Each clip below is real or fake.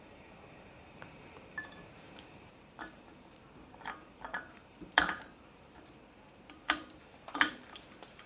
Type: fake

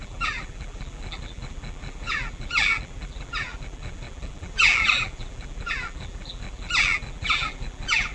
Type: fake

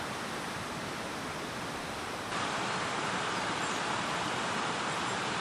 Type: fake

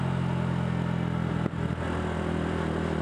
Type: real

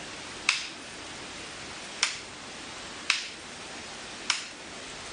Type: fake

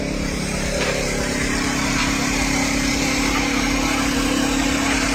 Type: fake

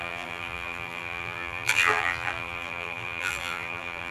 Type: fake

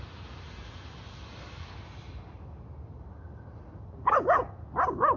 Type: real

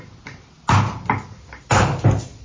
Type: real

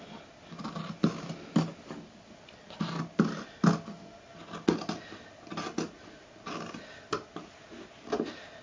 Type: real